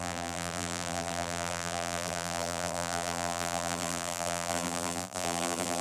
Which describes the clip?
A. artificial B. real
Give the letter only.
A